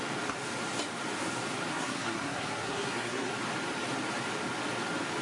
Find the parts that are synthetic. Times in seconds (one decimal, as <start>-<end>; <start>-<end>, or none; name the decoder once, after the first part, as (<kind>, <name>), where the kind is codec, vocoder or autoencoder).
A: 1.7-3.3 (codec, SNAC)